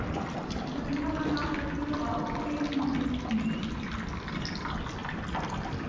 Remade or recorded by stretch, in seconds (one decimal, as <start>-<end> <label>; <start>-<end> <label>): 0.0-5.9 recorded